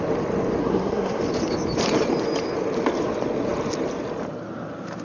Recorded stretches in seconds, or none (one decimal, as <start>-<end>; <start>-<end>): 0.0-0.6; 1.2-5.0